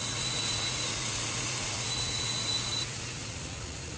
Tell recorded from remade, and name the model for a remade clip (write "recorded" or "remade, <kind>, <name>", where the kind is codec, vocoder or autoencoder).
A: remade, vocoder, Vocos